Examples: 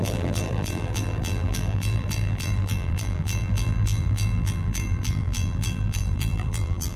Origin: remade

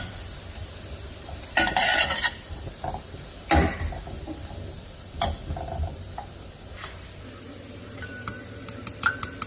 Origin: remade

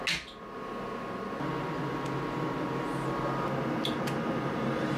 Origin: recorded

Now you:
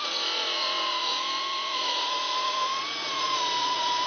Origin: remade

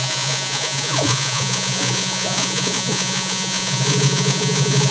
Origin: remade